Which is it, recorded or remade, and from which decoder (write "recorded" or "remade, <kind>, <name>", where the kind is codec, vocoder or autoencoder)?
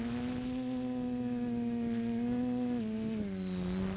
recorded